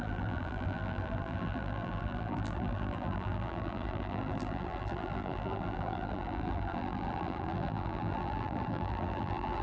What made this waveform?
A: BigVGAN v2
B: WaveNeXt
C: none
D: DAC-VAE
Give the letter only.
A